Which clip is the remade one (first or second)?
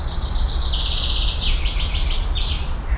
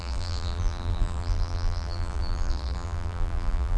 second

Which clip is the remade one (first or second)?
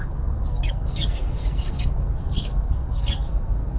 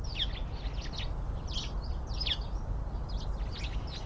first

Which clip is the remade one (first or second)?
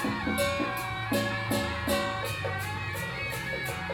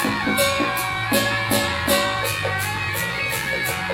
second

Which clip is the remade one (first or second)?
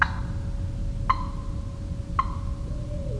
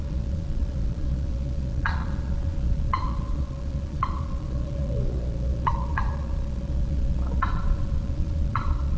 second